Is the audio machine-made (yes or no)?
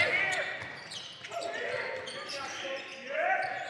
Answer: no